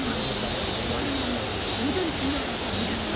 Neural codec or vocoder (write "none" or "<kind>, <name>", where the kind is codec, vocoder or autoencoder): vocoder, BigVGAN v2